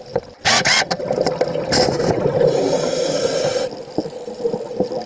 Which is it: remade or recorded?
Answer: recorded